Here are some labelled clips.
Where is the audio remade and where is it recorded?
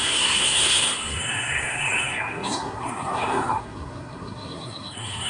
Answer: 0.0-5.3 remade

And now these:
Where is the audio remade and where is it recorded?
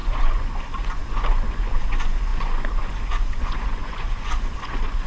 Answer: 0.0-5.1 remade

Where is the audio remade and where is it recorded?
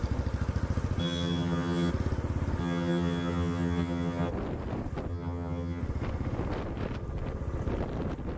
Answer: 0.0-1.0 recorded; 1.0-1.9 remade; 1.9-2.6 recorded; 2.6-4.3 remade; 4.3-5.1 recorded; 5.1-5.8 remade; 5.8-8.4 recorded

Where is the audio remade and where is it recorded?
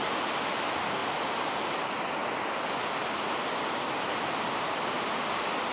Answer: 0.0-5.7 recorded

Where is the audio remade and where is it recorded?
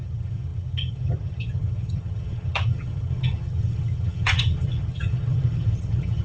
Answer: 0.0-6.2 remade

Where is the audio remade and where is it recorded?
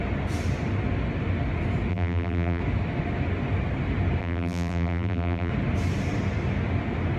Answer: 0.0-1.9 recorded; 1.9-2.6 remade; 2.6-4.2 recorded; 4.2-5.5 remade; 5.5-7.2 recorded